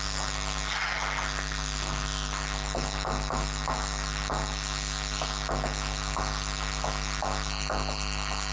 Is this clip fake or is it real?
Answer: real